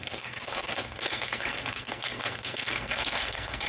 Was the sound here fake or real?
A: fake